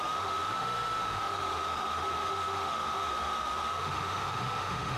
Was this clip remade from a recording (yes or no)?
yes